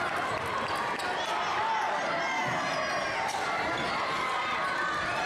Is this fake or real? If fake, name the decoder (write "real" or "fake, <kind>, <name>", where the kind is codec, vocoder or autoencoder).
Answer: real